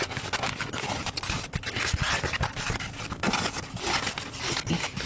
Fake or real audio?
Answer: real